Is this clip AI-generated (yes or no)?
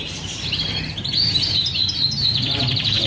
yes